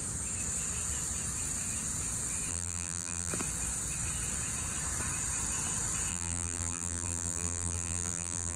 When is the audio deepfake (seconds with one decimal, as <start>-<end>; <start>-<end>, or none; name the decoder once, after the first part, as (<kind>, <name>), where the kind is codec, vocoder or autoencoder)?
2.5-3.3 (vocoder, BigVGAN v2); 6.1-8.6